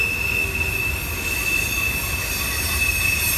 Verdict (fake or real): real